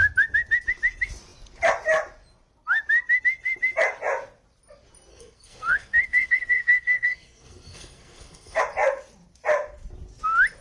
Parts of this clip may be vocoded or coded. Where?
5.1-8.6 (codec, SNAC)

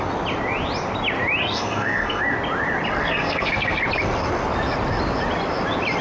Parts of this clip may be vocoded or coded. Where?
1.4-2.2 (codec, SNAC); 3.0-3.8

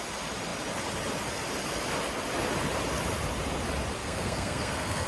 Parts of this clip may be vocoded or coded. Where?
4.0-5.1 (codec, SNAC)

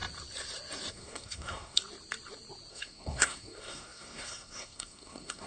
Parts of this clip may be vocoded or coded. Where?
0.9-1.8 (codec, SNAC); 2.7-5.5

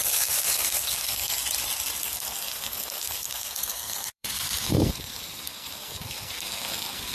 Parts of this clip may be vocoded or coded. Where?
0.0-1.4 (codec, SNAC); 2.0-7.1